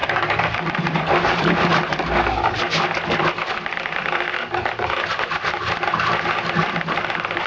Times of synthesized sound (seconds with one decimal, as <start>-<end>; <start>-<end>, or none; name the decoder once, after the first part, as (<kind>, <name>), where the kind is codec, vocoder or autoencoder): 0.0-1.7 (vocoder, BigVGAN v2)